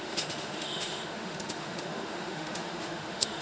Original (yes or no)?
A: no